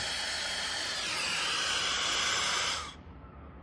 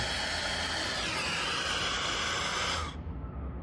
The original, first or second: second